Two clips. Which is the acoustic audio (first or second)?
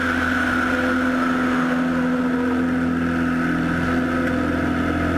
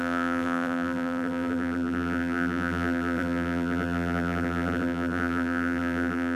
first